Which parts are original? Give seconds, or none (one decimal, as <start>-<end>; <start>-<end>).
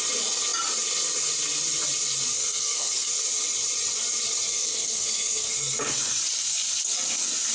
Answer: 0.0-2.3; 3.1-4.5; 6.2-7.5